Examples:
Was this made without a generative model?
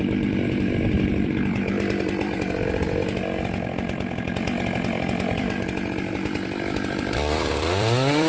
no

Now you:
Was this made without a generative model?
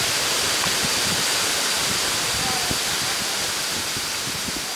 yes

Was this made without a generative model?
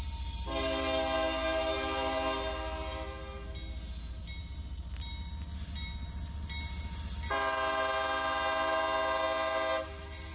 yes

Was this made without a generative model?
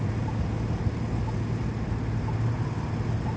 yes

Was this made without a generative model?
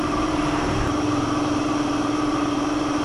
no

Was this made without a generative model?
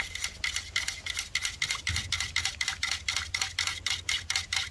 yes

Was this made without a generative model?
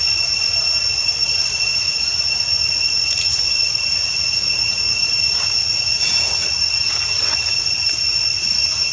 yes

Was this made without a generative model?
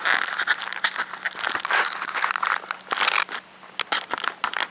yes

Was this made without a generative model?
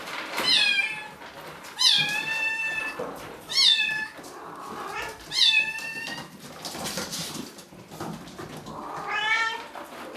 no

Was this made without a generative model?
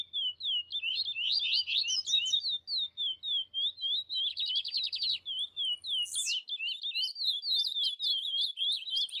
yes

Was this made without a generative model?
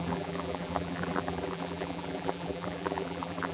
no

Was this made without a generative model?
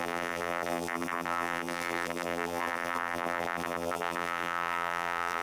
no